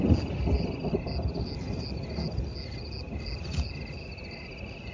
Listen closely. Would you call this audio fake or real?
real